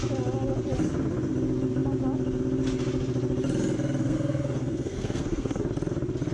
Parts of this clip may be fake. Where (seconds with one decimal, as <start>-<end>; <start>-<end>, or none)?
4.0-5.6